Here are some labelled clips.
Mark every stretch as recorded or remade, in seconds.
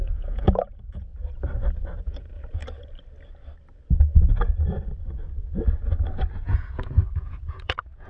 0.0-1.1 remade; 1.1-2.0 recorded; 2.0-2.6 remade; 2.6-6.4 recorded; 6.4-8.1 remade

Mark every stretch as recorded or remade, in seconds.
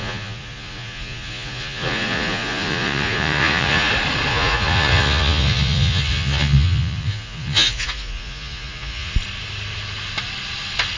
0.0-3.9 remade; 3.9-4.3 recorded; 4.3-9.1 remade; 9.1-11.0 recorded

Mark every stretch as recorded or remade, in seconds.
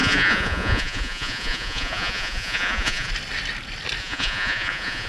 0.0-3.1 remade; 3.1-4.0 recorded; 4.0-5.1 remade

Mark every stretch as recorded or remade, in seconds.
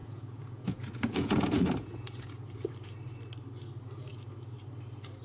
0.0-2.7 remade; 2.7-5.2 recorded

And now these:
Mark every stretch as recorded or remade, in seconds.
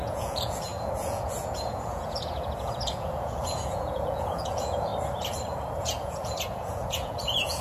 0.0-4.9 remade; 4.9-5.8 recorded; 5.8-7.6 remade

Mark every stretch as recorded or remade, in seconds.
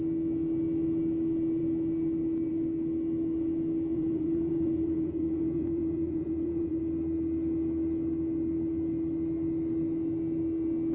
0.0-3.9 recorded; 3.9-6.8 remade; 6.8-10.9 recorded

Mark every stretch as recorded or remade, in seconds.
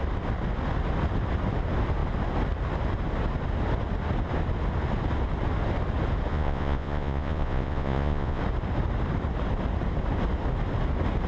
0.0-6.3 recorded; 6.3-8.4 remade; 8.4-11.3 recorded